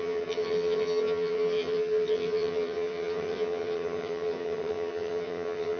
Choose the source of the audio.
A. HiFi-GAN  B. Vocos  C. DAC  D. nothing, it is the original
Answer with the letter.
A